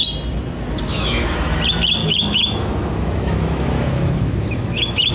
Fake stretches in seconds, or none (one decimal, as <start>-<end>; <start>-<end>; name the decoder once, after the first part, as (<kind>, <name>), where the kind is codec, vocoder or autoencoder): 0.9-1.6 (autoencoder, DAC-VAE); 2.0-5.1